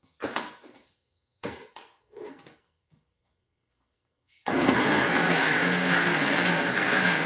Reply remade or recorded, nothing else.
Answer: remade